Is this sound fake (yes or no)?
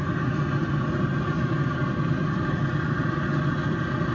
no